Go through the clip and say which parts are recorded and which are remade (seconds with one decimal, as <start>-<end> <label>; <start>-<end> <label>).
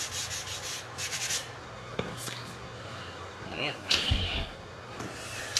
0.0-1.6 recorded; 1.6-5.0 remade; 5.0-5.6 recorded